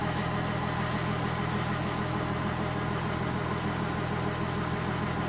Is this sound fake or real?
real